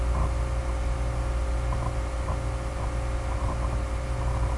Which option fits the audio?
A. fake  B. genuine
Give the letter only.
B